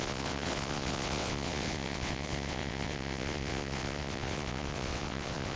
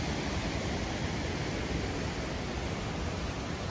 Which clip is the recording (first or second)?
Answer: second